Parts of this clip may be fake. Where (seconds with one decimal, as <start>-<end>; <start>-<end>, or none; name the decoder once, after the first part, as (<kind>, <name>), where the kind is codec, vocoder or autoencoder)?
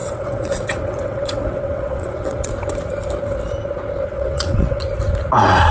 0.0-2.5 (vocoder, WaveNeXt); 4.1-4.8